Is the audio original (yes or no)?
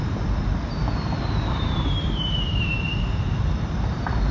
no